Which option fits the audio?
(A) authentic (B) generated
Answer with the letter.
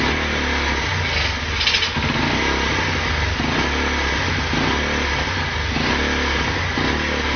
A